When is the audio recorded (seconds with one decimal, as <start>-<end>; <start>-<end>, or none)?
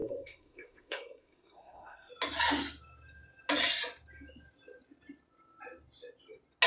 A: 2.1-6.7